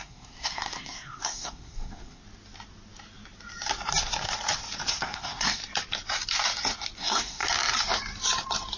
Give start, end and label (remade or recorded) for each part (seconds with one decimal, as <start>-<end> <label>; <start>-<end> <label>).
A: 0.0-2.2 remade; 2.2-4.9 recorded; 4.9-5.6 remade; 5.6-7.0 recorded; 7.0-7.4 remade; 7.4-8.8 recorded